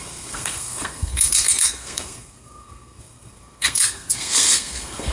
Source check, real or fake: fake